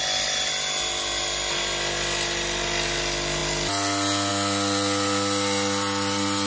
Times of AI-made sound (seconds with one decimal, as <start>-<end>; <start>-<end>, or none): none